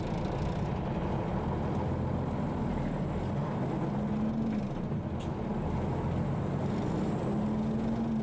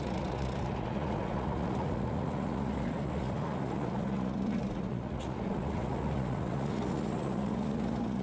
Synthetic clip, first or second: second